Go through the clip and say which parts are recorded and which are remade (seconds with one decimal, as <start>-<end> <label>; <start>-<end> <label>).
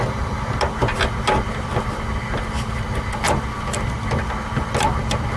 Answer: 0.0-5.4 recorded